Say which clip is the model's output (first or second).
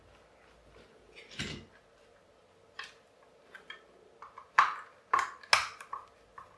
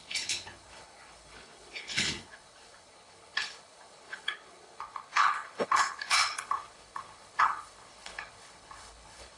second